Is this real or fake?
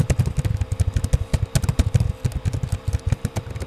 real